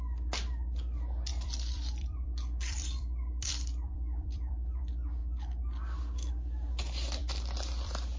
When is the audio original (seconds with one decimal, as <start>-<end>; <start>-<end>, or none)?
0.0-1.3; 4.8-7.2